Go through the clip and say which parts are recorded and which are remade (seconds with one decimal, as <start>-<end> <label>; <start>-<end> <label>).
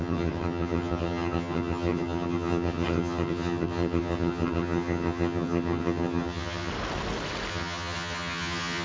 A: 0.0-6.7 remade; 6.7-7.5 recorded; 7.5-8.8 remade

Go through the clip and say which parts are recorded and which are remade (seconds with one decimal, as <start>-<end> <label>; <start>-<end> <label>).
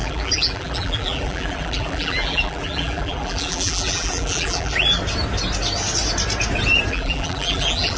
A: 0.0-5.0 remade; 5.0-6.9 recorded; 6.9-8.0 remade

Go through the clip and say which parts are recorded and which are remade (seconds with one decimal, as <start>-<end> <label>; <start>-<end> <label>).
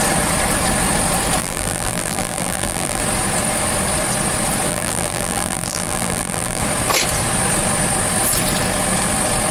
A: 0.0-1.4 recorded; 1.4-3.0 remade; 3.0-4.7 recorded; 4.7-6.6 remade; 6.6-9.5 recorded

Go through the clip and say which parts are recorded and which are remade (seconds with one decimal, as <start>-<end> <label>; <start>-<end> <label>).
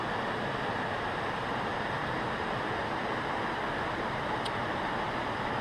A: 0.0-5.6 recorded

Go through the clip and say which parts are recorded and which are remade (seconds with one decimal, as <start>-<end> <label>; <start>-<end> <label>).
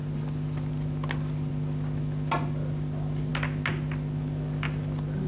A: 0.0-5.3 recorded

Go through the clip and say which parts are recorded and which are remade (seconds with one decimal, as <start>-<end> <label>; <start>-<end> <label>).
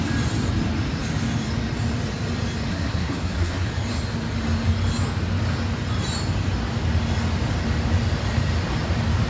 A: 0.0-2.7 recorded; 2.7-3.7 remade; 3.7-9.3 recorded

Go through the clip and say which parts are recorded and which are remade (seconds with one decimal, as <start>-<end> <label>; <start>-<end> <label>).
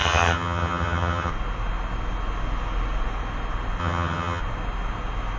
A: 0.0-1.3 remade; 1.3-3.8 recorded; 3.8-4.4 remade; 4.4-5.4 recorded